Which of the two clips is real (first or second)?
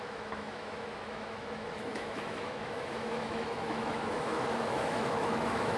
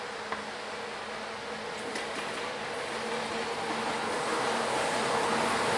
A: second